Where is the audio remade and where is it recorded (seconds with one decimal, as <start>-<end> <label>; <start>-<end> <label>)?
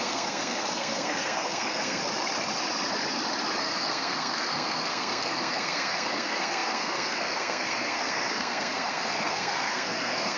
0.0-2.0 remade; 2.0-3.6 recorded; 3.6-10.4 remade